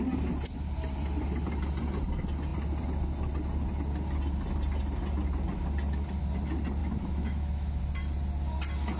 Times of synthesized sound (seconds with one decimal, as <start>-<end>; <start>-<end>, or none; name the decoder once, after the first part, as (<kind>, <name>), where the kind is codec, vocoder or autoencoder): 6.8-7.8 (autoencoder, DAC-VAE)